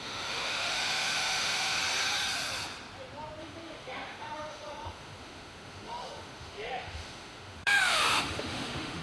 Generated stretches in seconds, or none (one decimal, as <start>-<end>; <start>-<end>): 0.0-1.8; 3.4-9.0